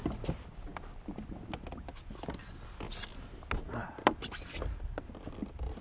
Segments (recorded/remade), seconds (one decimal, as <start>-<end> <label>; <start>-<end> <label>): 0.0-5.8 recorded